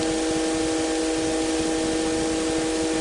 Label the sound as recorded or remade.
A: recorded